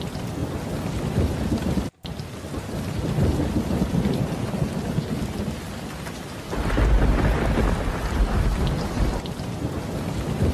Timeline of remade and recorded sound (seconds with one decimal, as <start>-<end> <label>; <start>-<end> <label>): 0.0-10.5 recorded

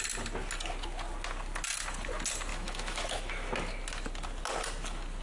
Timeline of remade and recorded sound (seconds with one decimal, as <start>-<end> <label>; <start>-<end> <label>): 0.0-2.5 recorded; 2.5-3.3 remade; 3.3-5.2 recorded

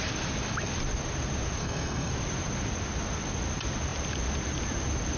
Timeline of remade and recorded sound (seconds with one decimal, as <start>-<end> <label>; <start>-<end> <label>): 0.0-1.6 recorded; 1.6-2.1 remade; 2.1-5.2 recorded

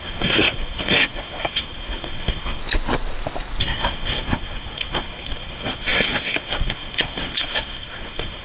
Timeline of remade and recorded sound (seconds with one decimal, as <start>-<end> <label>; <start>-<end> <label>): 0.0-2.6 remade; 2.6-3.6 recorded; 3.6-8.4 remade

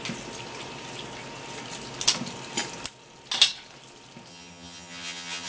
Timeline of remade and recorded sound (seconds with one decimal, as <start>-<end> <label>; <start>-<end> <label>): 0.0-4.3 recorded; 4.3-5.5 remade